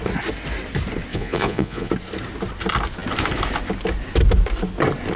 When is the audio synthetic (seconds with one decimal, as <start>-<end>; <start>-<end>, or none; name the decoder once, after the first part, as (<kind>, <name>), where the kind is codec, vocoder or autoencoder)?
1.1-1.9 (vocoder, Vocos)